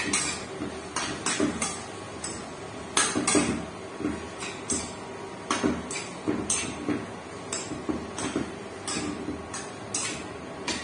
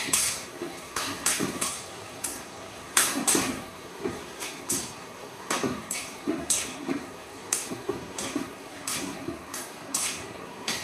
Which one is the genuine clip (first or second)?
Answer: first